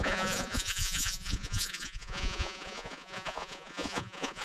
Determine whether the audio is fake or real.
fake